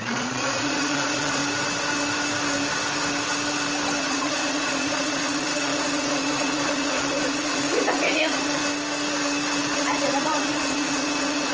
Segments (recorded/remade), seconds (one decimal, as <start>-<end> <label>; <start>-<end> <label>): 0.0-1.4 remade; 1.4-4.0 recorded; 4.0-8.6 remade; 8.6-9.6 recorded; 9.6-11.5 remade